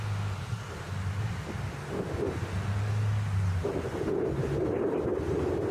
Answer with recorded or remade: recorded